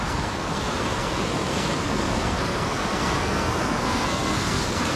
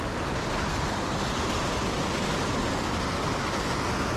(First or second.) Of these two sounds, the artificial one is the first